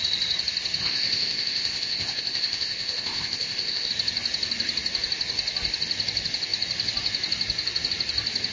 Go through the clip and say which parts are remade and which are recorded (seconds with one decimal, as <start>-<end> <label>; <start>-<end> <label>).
0.0-0.8 recorded; 0.8-3.9 remade; 3.9-8.5 recorded